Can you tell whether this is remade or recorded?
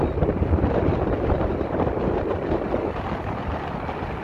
recorded